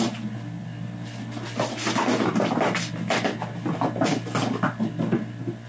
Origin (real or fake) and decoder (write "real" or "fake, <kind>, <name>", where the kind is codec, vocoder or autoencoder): real